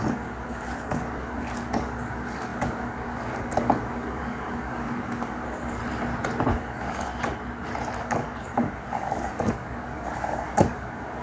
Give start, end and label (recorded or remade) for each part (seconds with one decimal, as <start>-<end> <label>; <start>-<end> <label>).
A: 0.0-5.8 remade; 5.8-6.5 recorded; 6.5-7.1 remade; 7.1-8.0 recorded; 8.0-11.2 remade